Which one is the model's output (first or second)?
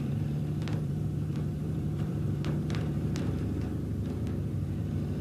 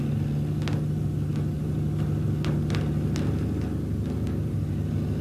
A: first